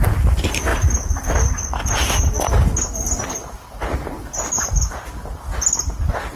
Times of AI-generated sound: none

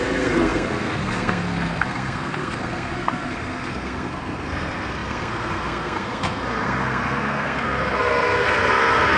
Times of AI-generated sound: 0.0-9.2 (codec, SNAC)

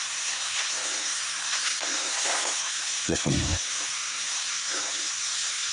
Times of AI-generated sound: 0.0-5.7 (codec, SNAC)

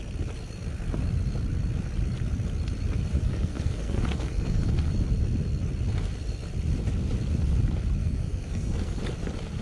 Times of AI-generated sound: 3.1-4.9 (codec, SNAC); 8.0-9.0

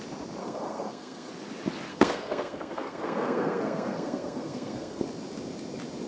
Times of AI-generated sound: 0.4-1.3 (codec, SNAC); 1.9-5.0

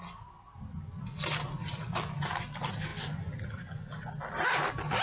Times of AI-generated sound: none

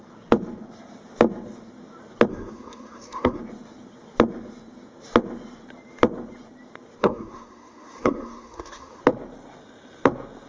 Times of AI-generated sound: 2.3-3.4 (codec, SNAC); 7.0-9.0

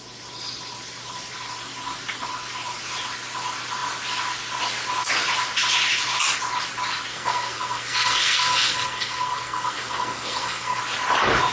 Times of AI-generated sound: 7.1-10.8 (codec, SNAC)